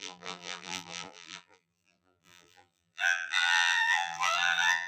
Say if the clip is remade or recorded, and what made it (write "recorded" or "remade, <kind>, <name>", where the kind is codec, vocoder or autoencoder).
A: remade, vocoder, BigVGAN v2